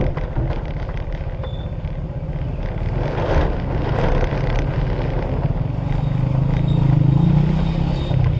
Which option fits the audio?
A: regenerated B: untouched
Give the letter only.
B